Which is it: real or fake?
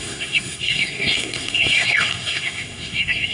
fake